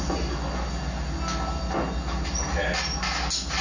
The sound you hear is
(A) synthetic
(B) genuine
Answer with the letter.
B